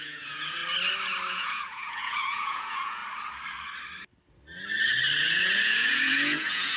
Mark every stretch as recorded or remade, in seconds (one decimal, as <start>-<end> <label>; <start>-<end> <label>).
0.0-0.6 remade; 0.6-1.3 recorded; 1.3-3.0 remade; 3.0-5.2 recorded; 5.2-6.8 remade